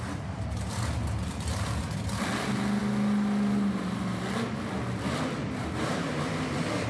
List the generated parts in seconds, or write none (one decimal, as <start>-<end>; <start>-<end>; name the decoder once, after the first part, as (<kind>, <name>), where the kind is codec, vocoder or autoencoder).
none